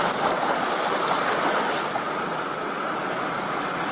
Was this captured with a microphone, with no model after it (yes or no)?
yes